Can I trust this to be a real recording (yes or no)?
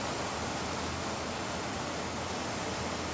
yes